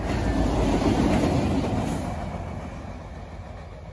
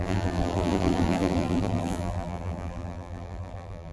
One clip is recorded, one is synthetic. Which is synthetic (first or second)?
second